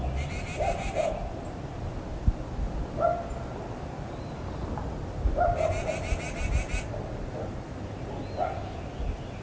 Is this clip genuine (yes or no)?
yes